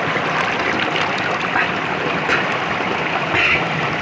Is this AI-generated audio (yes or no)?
no